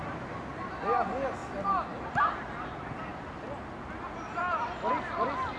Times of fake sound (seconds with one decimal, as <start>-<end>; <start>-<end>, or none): none